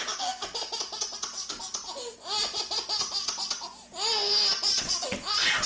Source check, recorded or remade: recorded